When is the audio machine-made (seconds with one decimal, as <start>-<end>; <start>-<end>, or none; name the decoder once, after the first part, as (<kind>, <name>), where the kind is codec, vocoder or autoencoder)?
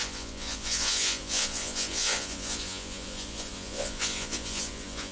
0.0-5.1 (vocoder, Vocos)